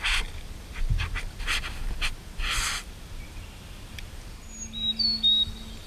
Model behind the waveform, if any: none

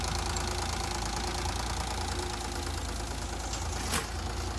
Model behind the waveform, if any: none